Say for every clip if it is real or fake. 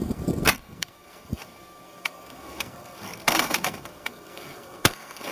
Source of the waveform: fake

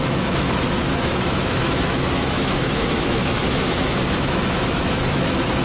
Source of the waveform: fake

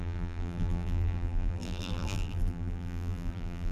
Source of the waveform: fake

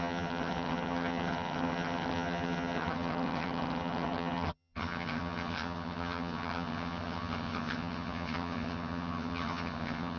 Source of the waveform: fake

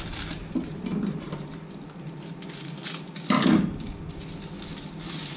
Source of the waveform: real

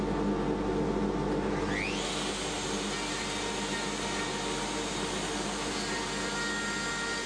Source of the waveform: real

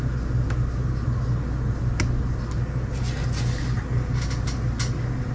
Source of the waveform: real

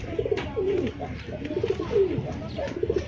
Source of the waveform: real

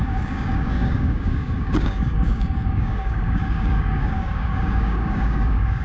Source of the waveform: fake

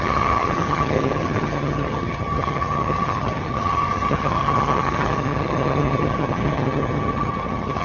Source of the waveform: fake